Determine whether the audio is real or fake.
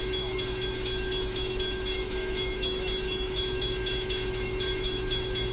fake